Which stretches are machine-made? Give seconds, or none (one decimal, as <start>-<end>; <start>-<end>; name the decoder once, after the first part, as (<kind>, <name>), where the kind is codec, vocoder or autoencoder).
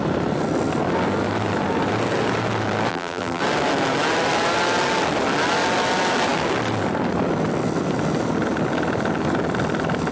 2.9-3.4 (vocoder, BigVGAN v2)